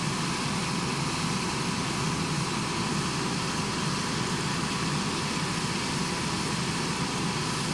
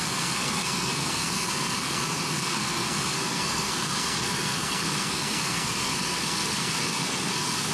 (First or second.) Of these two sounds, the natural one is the first